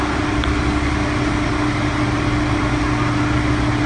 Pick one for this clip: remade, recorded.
recorded